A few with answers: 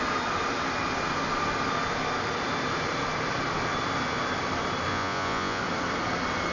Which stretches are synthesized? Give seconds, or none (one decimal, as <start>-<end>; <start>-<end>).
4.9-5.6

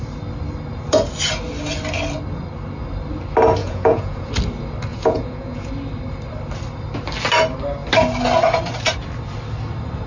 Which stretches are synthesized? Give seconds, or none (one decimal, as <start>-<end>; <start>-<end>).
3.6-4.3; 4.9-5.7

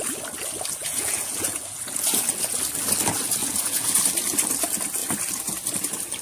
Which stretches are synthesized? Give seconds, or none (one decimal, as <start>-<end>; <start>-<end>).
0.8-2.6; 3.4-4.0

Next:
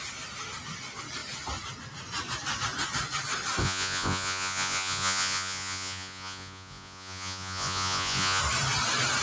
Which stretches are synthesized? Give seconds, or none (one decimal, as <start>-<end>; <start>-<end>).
3.6-8.4

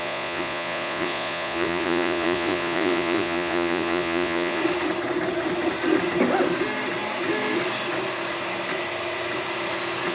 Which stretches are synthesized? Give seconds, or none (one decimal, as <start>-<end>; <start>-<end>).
0.0-4.6

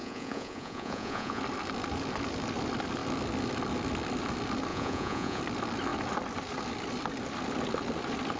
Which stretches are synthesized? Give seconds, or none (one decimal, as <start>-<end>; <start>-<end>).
0.0-1.4; 4.7-5.4